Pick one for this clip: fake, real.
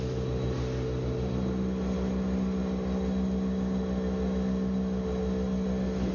real